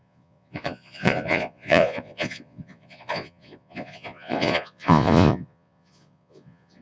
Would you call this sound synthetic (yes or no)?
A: yes